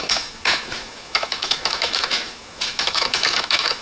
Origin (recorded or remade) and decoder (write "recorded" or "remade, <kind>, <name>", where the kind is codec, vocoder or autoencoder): remade, autoencoder, DAC-VAE